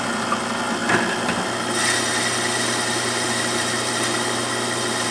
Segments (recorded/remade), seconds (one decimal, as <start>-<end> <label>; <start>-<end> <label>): 0.0-5.1 recorded